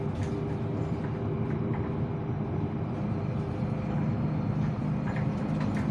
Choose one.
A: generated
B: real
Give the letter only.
B